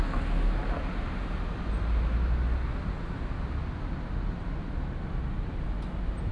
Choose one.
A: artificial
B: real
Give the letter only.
B